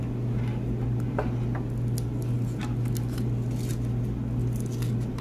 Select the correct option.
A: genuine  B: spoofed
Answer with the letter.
A